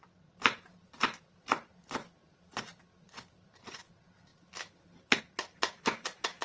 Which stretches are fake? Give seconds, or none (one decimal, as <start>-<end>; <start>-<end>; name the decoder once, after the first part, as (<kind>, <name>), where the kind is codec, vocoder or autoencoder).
none